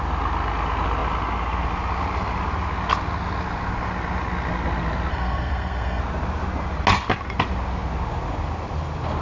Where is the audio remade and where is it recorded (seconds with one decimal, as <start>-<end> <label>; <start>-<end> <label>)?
0.0-5.1 recorded; 5.1-6.0 remade; 6.0-9.2 recorded